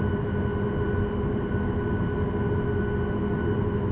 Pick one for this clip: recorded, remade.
recorded